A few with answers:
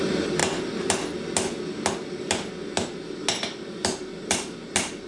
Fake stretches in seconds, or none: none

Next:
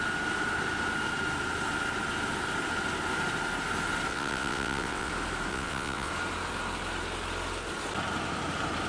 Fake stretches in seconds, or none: 4.1-5.1 (vocoder, WaveNeXt); 5.5-6.1

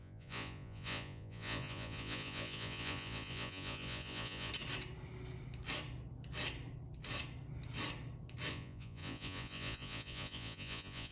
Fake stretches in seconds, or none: 0.0-4.5 (vocoder, Vocos); 8.5-11.1

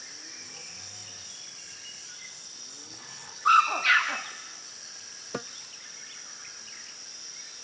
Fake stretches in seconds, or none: 2.8-3.6 (codec, HILCodec)

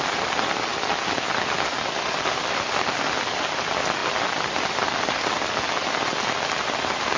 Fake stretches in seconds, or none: none